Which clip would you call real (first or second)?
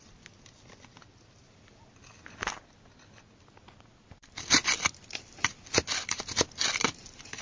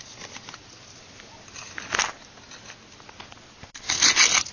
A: second